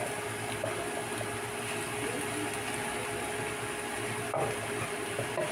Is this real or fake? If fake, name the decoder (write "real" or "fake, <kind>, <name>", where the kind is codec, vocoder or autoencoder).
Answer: real